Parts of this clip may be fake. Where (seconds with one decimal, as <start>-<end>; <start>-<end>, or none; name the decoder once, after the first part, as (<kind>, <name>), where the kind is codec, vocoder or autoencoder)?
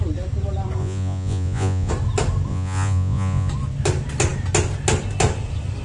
0.8-1.9 (vocoder, Vocos); 2.5-3.5